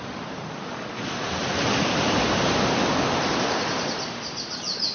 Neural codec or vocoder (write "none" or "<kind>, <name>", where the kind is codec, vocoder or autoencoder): none